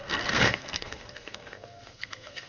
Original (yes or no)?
no